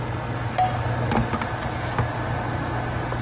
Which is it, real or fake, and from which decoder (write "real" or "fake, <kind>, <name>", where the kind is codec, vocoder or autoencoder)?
real